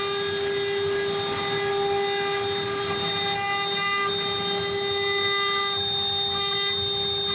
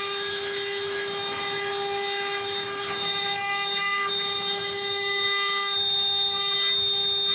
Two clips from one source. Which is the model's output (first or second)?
second